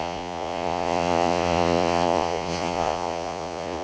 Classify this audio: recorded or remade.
remade